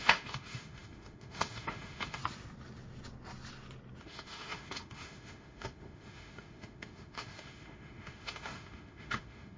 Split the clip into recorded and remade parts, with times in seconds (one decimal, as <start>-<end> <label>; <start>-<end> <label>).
0.0-2.2 remade; 2.2-4.0 recorded; 4.0-9.6 remade